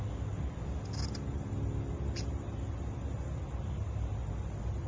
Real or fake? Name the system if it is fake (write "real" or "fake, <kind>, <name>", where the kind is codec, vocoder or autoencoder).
real